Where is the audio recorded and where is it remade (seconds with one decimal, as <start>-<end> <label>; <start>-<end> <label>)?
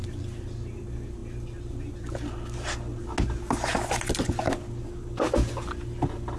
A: 0.0-6.4 recorded